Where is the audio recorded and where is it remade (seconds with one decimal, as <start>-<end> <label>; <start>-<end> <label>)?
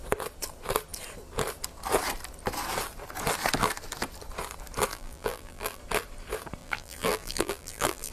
0.0-4.9 recorded; 4.9-5.8 remade; 5.8-6.6 recorded; 6.6-8.1 remade